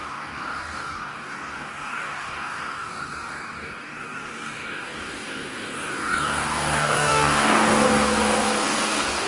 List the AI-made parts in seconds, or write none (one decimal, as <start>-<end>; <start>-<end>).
0.0-9.3